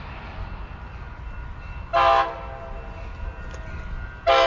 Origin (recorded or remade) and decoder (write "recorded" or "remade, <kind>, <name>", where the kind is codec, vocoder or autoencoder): recorded